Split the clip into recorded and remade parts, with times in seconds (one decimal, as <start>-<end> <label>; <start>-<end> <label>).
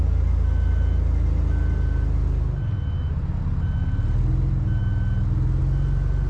0.0-6.3 recorded